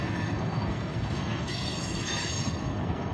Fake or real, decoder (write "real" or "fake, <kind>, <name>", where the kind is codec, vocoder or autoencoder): fake, codec, SNAC